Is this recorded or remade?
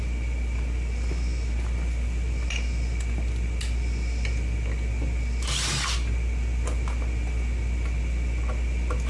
recorded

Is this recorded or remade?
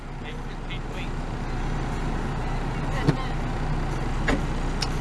recorded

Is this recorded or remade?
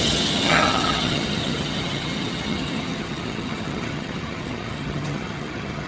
remade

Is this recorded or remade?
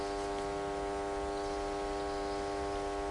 recorded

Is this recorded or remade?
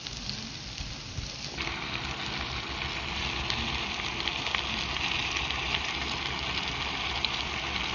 recorded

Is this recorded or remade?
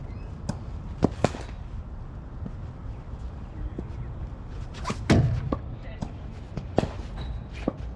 recorded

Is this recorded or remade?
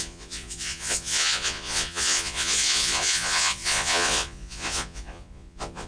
remade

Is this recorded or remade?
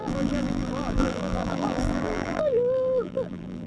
remade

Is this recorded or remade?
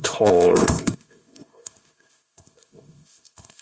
remade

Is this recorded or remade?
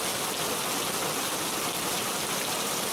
recorded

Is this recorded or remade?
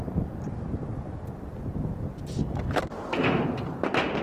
recorded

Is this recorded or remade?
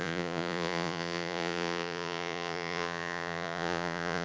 remade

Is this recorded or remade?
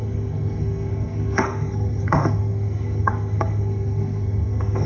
remade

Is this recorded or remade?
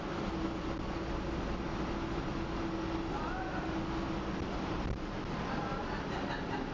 recorded